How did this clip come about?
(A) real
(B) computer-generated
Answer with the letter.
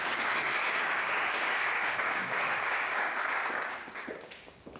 B